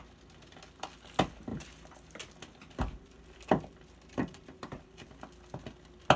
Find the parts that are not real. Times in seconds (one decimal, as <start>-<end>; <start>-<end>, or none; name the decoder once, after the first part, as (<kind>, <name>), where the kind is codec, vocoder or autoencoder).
4.2-5.1 (vocoder, BigVGAN v2)